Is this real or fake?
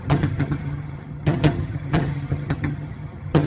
fake